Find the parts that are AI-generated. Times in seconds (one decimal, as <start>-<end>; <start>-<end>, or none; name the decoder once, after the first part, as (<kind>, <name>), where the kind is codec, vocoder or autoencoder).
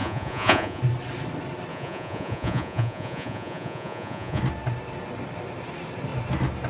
0.0-0.8 (vocoder, Vocos); 1.7-4.4